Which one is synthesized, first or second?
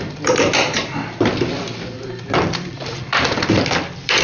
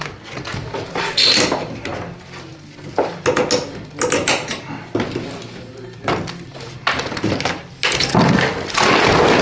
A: first